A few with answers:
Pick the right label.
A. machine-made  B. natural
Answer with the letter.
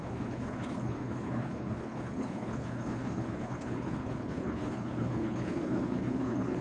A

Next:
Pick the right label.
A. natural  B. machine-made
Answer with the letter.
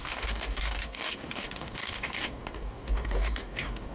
B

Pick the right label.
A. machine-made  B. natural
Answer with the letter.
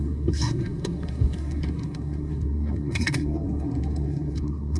A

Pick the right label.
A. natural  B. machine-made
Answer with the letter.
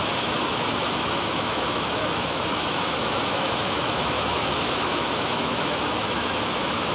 B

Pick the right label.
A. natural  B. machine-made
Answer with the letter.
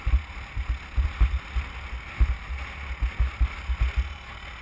A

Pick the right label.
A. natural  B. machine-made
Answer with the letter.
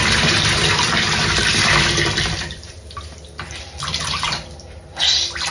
B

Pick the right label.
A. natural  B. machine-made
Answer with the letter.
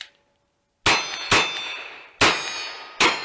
A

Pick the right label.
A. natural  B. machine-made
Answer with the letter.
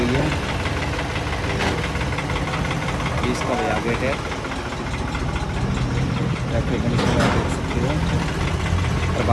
A